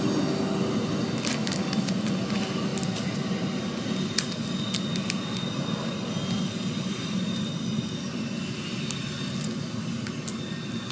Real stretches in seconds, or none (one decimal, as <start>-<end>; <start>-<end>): 0.0-10.9